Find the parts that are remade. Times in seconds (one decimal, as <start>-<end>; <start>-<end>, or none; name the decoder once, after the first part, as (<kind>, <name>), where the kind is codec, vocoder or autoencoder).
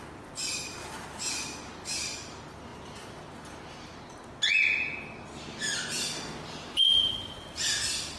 none